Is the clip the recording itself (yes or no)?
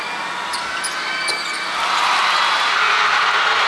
yes